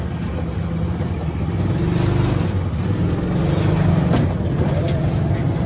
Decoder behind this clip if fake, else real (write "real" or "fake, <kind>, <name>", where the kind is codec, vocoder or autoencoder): real